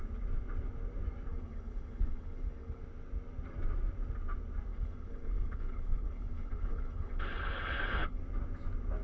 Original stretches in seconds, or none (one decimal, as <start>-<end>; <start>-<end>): 0.0-1.3; 2.8-4.7; 8.2-9.0